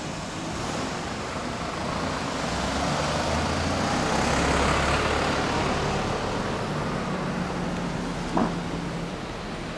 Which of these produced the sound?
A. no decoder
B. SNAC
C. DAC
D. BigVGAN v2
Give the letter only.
A